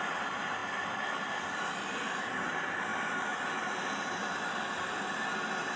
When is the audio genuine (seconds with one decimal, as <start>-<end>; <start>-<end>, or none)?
0.0-0.6; 2.1-2.9; 5.0-5.8